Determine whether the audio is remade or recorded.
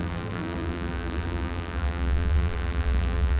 remade